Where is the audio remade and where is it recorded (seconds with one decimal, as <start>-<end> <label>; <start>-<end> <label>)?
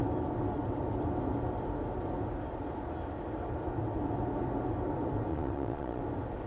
0.0-5.3 recorded; 5.3-6.0 remade; 6.0-6.5 recorded